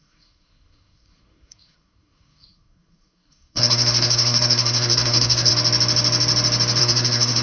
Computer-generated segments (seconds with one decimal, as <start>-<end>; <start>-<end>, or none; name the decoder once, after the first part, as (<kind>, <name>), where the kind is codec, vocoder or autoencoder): 0.0-5.5 (codec, SNAC); 6.8-7.4